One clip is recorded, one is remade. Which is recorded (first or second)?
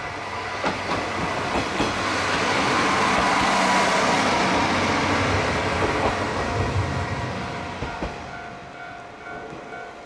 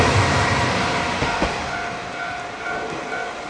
first